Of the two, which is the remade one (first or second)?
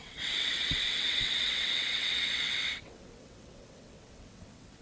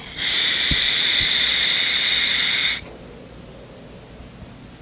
first